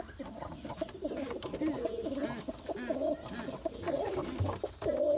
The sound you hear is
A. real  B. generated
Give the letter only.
A